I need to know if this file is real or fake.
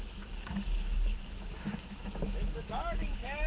fake